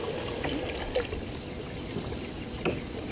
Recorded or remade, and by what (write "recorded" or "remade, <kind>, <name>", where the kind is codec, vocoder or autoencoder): recorded